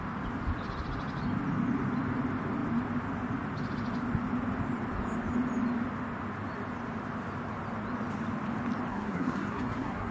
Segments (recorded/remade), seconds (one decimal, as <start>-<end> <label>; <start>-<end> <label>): 0.0-8.9 recorded; 8.9-10.1 remade